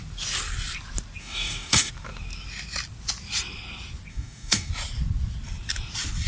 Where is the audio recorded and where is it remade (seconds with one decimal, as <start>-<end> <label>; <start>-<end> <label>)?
0.0-1.2 recorded; 1.2-1.9 remade; 1.9-4.1 recorded; 4.1-4.7 remade; 4.7-6.3 recorded